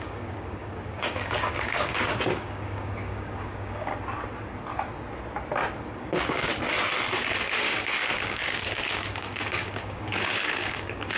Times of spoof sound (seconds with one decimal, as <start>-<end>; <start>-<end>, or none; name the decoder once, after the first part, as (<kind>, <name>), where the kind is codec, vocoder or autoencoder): 0.0-3.9 (codec, DAC); 6.0-6.5; 7.1-11.2